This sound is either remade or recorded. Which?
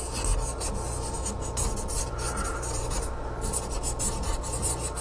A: recorded